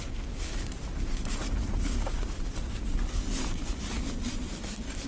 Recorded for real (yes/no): yes